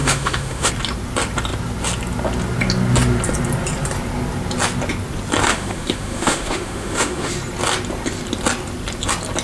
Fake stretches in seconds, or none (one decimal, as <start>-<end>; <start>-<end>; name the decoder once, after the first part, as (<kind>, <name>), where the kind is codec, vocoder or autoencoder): 0.0-0.7 (autoencoder, DAC-VAE); 5.5-7.3